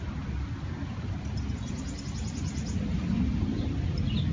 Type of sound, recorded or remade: recorded